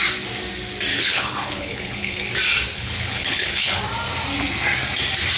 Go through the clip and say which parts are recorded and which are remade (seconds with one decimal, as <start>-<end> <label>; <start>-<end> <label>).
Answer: 0.0-0.9 recorded; 0.9-2.3 remade; 2.3-2.7 recorded; 2.7-3.8 remade; 3.8-5.4 recorded